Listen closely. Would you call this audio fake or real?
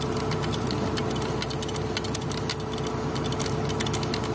real